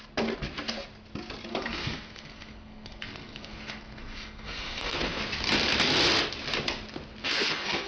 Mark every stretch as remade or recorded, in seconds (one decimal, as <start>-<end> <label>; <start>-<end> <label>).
0.0-1.5 recorded; 1.5-5.2 remade; 5.2-7.2 recorded; 7.2-7.9 remade